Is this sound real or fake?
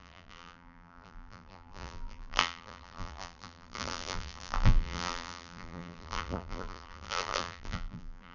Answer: fake